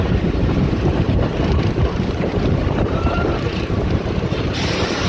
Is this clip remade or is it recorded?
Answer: remade